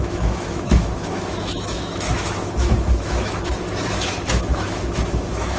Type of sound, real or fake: fake